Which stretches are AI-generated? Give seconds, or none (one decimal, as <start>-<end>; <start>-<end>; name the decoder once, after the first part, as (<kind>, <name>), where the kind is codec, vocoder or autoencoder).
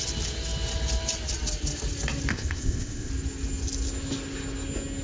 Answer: 2.3-3.1 (codec, ZipCodec)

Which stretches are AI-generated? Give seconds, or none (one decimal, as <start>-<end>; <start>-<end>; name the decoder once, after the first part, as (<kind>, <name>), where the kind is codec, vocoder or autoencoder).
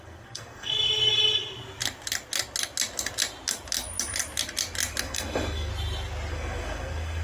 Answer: 0.0-0.7 (codec, SNAC); 5.0-5.7; 6.3-7.2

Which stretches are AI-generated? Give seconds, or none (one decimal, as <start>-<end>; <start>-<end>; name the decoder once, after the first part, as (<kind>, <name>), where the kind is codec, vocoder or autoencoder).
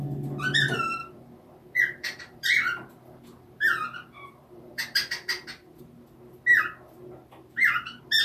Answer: 1.0-5.8 (vocoder, BigVGAN v2)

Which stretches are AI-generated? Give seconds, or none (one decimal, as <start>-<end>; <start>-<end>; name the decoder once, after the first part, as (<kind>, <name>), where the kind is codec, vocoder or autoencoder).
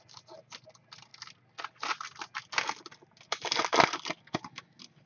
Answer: none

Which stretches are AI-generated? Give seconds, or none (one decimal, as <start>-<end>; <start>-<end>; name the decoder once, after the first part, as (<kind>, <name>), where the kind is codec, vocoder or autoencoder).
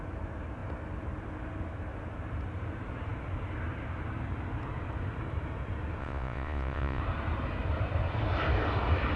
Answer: 6.0-7.0 (vocoder, Vocos)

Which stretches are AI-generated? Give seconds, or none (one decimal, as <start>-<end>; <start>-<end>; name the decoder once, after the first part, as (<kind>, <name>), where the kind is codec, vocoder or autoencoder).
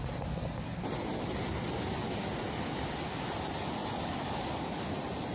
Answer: none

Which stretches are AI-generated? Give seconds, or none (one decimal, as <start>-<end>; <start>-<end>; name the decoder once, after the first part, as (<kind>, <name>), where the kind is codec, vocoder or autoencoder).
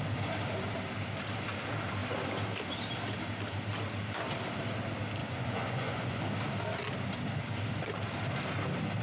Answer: 5.2-6.2 (vocoder, Vocos)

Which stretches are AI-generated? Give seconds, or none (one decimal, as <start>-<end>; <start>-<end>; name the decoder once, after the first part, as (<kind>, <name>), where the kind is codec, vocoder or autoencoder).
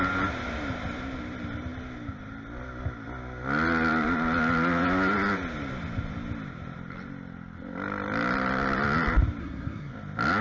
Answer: 9.4-9.9 (codec, SNAC)